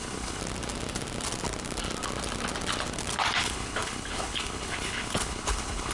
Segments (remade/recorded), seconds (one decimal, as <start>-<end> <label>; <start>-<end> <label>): 0.0-0.4 remade; 0.4-3.4 recorded; 3.4-5.9 remade